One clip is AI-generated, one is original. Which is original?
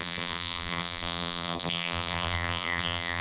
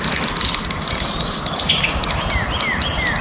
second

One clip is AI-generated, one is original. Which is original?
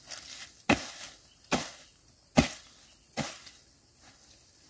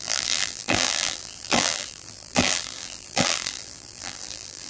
first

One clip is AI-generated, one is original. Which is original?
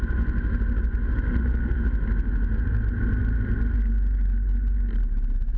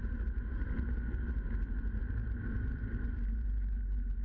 first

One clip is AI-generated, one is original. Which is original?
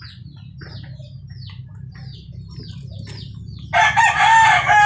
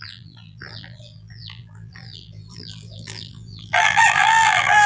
first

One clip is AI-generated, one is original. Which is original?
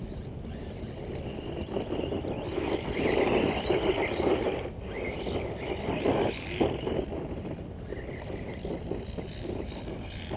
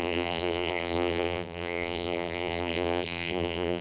first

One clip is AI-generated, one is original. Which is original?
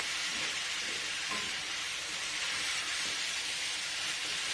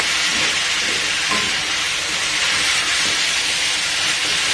second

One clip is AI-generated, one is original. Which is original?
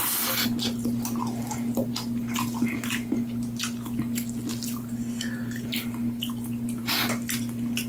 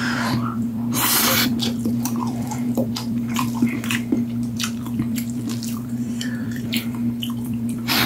first